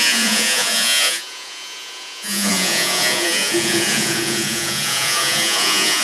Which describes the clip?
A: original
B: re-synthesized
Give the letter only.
B